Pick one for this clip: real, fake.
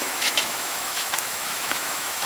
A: fake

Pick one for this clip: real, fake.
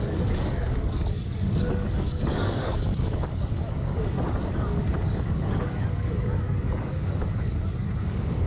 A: fake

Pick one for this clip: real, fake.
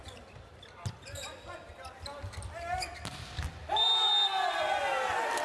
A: real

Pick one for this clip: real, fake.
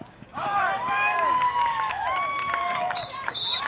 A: fake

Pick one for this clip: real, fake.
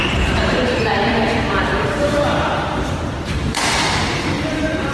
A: fake